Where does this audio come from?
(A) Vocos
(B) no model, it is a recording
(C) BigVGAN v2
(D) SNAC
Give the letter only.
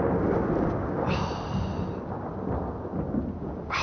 B